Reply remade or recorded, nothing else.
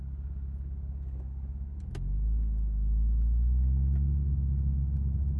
recorded